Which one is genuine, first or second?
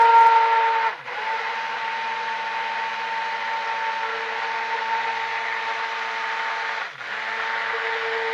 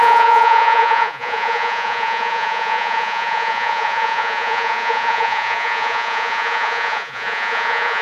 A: first